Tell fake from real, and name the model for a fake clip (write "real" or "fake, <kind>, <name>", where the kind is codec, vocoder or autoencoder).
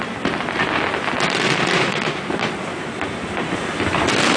real